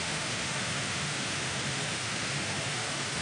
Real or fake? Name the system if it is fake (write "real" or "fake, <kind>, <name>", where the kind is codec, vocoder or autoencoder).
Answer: fake, autoencoder, DAC-VAE